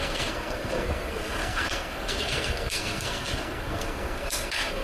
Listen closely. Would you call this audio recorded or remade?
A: remade